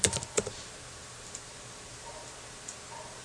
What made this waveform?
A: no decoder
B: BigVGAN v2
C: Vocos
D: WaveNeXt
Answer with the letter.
B